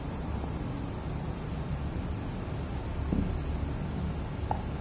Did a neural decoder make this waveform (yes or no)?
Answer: no